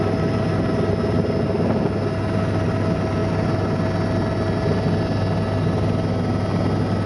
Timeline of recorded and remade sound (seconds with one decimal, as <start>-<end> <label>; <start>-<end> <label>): 0.0-7.1 recorded